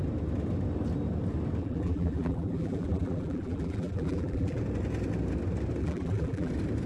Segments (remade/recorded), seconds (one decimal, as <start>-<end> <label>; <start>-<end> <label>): 0.0-1.6 recorded; 1.6-4.6 remade; 4.6-5.8 recorded; 5.8-6.5 remade; 6.5-6.9 recorded

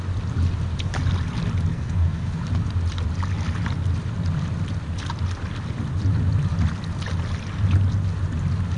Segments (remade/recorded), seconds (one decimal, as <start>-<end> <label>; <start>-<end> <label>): 0.0-1.7 recorded; 1.7-2.4 remade; 2.4-8.8 recorded